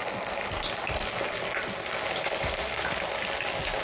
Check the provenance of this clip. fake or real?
real